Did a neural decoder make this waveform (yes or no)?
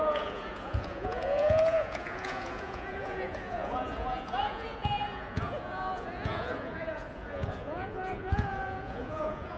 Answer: yes